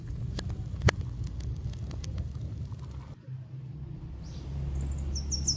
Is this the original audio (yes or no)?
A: yes